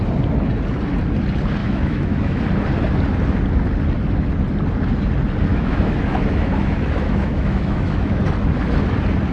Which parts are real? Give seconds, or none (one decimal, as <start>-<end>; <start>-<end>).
0.0-1.6; 2.4-5.5; 8.2-9.3